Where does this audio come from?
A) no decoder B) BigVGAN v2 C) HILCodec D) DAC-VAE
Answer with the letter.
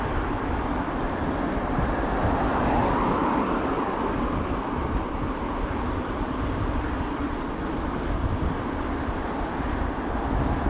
B